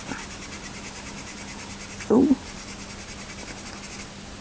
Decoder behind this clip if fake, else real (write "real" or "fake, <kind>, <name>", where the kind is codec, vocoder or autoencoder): real